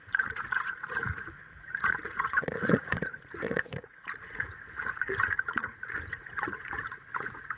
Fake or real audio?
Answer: fake